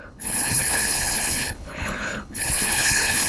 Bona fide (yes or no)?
no